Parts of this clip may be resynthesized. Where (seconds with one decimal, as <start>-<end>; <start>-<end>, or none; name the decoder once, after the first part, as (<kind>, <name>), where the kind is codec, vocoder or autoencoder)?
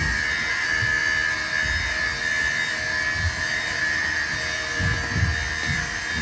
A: none